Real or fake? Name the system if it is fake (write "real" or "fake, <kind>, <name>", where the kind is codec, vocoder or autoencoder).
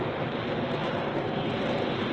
real